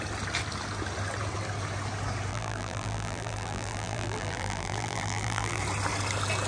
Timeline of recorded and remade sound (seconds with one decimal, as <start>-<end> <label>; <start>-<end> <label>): 0.0-2.3 recorded; 2.3-5.6 remade; 5.6-6.5 recorded